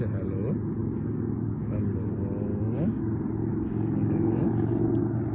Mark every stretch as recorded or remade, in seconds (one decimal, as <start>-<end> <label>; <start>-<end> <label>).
0.0-0.8 recorded; 0.8-1.8 remade; 1.8-2.5 recorded; 2.5-3.0 remade; 3.0-3.5 recorded; 3.5-4.5 remade; 4.5-5.3 recorded